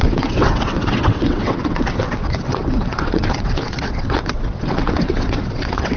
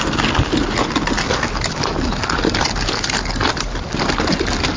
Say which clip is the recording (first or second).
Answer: second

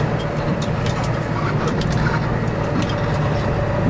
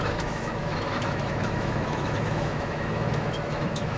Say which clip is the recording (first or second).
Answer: first